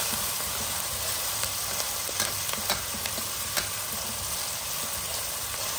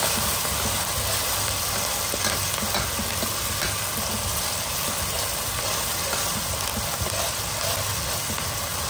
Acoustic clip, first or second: second